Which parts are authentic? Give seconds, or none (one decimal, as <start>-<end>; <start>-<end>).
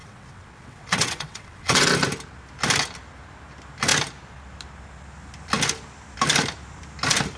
1.9-7.4